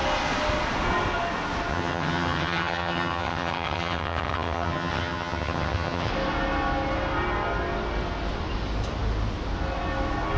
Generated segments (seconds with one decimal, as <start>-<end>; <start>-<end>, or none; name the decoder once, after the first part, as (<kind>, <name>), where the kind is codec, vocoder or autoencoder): 1.7-6.1 (vocoder, HiFi-GAN)